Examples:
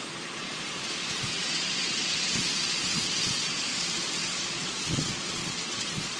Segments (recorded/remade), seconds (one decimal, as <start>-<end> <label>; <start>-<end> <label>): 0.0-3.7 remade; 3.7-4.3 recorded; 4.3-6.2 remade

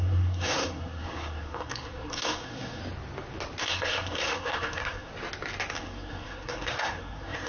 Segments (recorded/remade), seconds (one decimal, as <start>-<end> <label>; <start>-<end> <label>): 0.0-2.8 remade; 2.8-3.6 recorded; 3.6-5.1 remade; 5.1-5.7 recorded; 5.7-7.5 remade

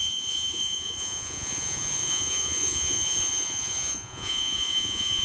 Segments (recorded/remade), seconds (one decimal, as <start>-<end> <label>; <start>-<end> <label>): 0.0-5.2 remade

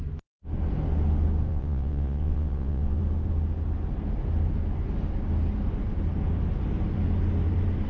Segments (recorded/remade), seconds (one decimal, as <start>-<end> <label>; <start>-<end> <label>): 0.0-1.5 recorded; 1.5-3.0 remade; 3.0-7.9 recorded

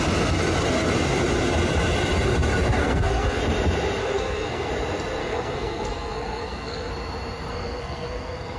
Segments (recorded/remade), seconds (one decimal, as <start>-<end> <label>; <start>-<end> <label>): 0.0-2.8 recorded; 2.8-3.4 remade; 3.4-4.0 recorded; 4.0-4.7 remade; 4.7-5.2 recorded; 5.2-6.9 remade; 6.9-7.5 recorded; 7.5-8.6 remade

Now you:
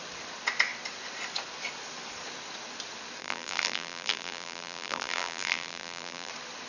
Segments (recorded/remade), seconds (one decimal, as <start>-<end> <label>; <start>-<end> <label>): 0.0-3.2 recorded; 3.2-6.3 remade; 6.3-6.7 recorded